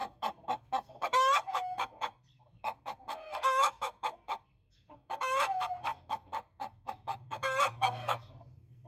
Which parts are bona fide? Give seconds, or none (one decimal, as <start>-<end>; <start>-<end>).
none